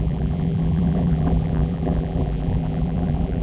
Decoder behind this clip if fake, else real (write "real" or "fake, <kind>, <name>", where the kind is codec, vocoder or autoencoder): fake, vocoder, BigVGAN v2